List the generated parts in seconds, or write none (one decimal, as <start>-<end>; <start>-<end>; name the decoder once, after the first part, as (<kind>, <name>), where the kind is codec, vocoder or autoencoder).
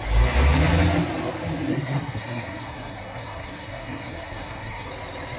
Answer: 1.7-4.9 (codec, SNAC)